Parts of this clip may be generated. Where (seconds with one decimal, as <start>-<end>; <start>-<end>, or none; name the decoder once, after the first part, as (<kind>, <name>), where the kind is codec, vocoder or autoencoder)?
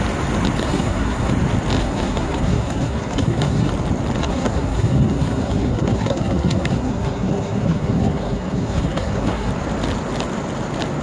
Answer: 0.6-1.3 (codec, SNAC); 1.8-3.7; 4.2-9.5